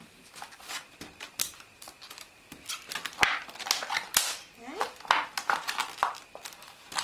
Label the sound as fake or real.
real